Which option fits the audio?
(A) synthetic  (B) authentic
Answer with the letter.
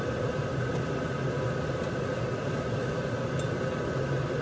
B